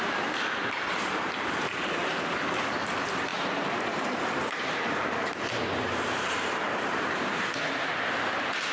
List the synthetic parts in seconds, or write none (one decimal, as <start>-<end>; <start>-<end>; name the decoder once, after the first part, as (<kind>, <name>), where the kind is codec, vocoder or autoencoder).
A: 3.3-7.4 (vocoder, BigVGAN v2)